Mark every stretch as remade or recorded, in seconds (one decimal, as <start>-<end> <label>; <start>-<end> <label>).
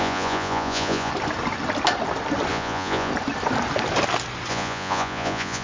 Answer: 0.0-1.1 remade; 1.1-2.5 recorded; 2.5-3.1 remade; 3.1-4.5 recorded; 4.5-5.6 remade